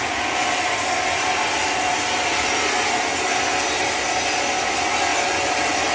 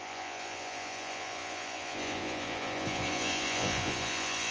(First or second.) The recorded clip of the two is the first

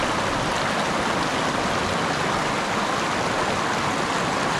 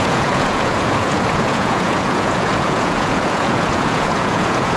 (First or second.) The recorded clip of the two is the first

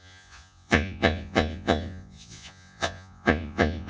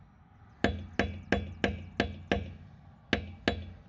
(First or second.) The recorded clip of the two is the second